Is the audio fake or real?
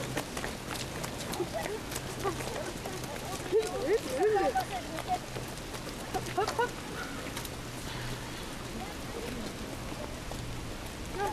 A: real